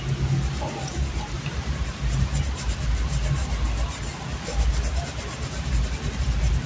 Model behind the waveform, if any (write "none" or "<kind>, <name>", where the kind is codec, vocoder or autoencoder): none